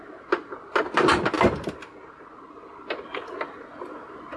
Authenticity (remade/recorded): recorded